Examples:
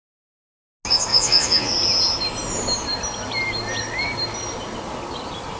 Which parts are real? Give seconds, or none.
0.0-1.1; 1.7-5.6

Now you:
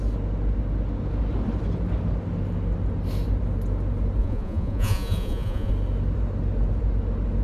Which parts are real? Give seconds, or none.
0.0-4.2; 5.7-7.4